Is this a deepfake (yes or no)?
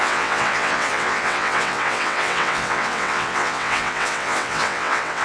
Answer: yes